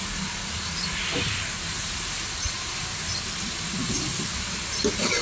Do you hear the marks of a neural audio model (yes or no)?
no